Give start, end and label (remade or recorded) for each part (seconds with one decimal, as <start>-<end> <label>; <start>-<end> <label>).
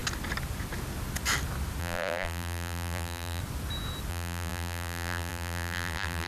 0.0-1.8 recorded; 1.8-3.4 remade; 3.4-4.1 recorded; 4.1-6.3 remade